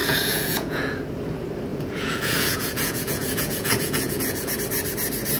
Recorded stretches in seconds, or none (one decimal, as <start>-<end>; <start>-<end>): 0.9-1.7; 4.5-5.4